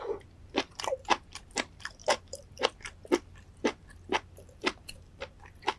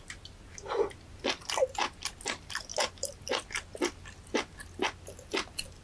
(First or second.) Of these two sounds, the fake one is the first